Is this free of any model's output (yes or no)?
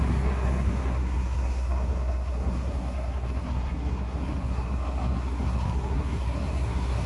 no